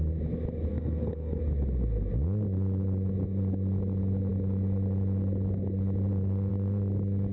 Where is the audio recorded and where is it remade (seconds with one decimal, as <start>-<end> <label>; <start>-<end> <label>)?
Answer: 0.0-0.7 recorded; 0.7-1.4 remade; 1.4-7.3 recorded